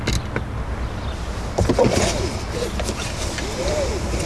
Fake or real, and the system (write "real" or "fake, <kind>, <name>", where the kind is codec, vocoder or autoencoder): real